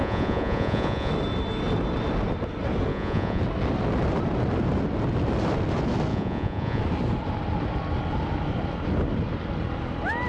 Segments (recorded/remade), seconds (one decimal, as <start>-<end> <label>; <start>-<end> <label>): 0.0-1.1 remade; 1.1-2.9 recorded; 2.9-3.4 remade; 3.4-6.1 recorded; 6.1-6.8 remade; 6.8-10.3 recorded